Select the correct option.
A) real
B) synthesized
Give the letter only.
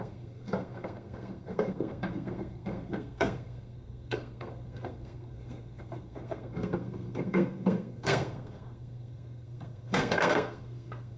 B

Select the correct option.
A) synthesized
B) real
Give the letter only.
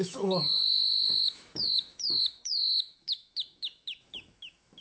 A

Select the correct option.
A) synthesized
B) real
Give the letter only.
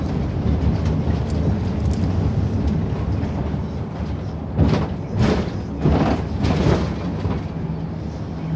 B